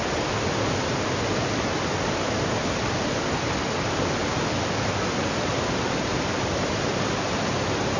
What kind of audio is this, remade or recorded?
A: recorded